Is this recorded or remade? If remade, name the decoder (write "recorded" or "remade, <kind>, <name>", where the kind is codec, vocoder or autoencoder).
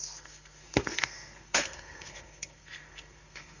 remade, codec, SNAC